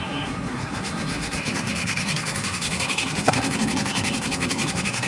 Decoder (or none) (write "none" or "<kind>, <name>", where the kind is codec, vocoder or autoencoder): codec, SNAC